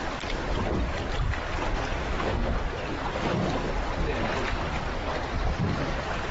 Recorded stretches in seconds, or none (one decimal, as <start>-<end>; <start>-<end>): 0.0-2.0; 2.5-6.3